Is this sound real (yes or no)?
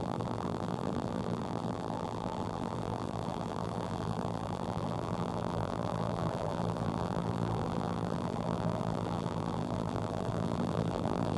no